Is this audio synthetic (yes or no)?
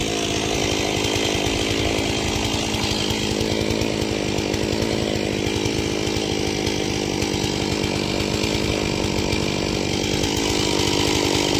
no